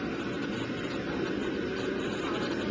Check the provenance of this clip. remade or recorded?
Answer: recorded